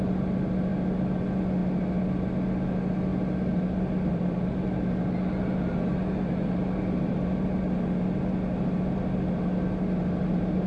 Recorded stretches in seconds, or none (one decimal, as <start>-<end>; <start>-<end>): 0.0-10.7